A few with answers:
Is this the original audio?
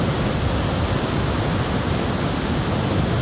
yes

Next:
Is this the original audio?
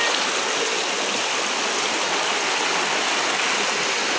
yes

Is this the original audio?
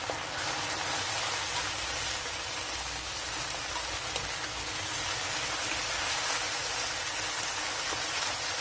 yes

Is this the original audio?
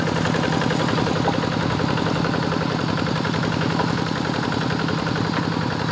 yes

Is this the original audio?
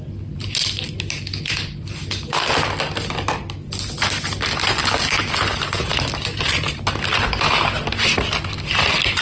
yes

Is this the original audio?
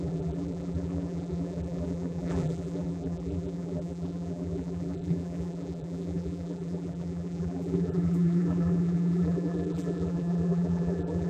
no